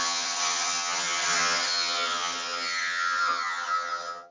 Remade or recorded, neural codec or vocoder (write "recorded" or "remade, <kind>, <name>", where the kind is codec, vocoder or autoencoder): remade, vocoder, HiFi-GAN